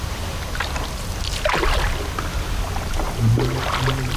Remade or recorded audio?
recorded